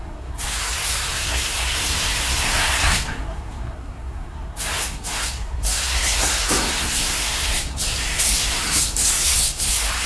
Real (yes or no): no